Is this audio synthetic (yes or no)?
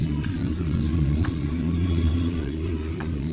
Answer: yes